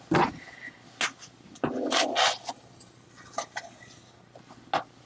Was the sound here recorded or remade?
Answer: recorded